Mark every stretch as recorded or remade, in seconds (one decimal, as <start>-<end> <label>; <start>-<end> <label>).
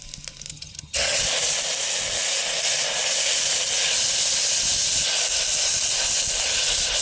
0.0-0.5 recorded; 0.5-1.2 remade; 1.2-7.0 recorded